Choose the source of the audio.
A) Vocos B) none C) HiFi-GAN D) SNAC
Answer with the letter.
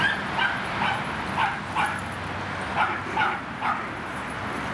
B